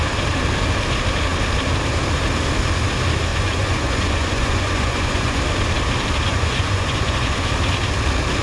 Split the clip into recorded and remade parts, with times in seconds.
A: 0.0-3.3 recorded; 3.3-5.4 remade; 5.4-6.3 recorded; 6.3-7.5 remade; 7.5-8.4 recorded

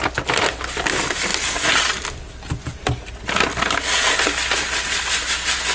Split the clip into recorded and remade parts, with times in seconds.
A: 0.0-5.7 recorded